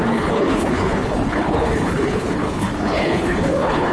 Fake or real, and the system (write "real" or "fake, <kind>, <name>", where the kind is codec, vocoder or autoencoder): fake, codec, HILCodec